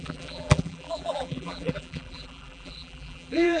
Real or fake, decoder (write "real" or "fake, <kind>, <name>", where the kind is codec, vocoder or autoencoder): fake, vocoder, BigVGAN v2